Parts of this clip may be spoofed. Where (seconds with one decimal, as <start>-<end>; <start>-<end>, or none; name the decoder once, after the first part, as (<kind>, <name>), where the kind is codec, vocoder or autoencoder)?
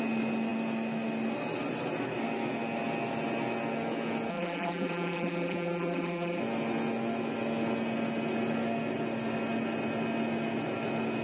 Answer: 4.3-6.4 (vocoder, BigVGAN v2)